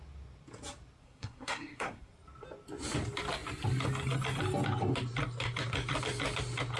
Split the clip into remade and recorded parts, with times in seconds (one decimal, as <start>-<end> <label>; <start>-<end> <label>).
0.0-1.0 recorded; 1.0-2.1 remade; 2.1-6.8 recorded